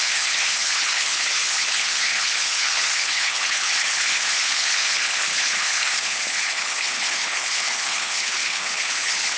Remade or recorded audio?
remade